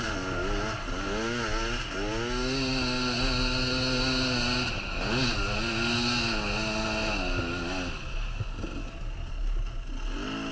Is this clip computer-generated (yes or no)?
no